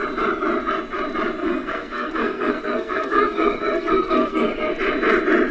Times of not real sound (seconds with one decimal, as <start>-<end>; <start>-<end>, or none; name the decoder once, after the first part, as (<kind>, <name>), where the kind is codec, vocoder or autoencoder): 1.4-4.7 (codec, SNAC)